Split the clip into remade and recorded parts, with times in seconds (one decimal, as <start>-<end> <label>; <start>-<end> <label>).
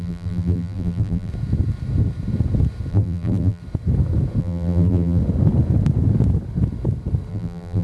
0.0-1.3 remade; 1.3-2.9 recorded; 2.9-3.6 remade; 3.6-4.4 recorded; 4.4-5.2 remade; 5.2-7.3 recorded; 7.3-7.8 remade